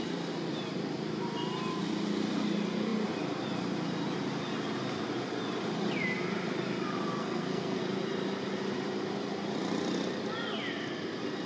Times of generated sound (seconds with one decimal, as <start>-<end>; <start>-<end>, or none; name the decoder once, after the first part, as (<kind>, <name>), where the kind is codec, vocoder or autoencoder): 7.1-7.8 (codec, SNAC)